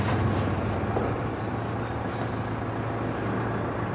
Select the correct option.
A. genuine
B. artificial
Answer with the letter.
A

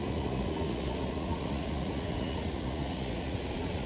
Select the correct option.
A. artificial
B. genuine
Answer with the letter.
A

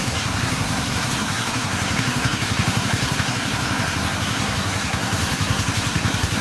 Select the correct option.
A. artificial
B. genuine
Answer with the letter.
A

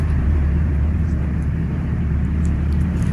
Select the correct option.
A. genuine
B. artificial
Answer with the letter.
B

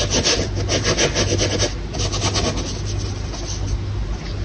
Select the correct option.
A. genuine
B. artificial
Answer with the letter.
A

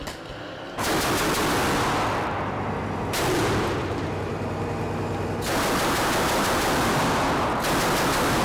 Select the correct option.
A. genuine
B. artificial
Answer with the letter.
A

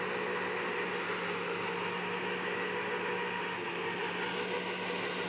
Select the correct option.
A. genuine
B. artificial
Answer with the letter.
A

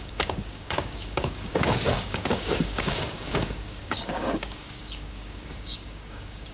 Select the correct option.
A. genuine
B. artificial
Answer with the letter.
B